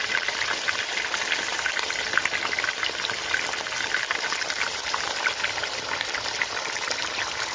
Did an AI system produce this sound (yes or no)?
no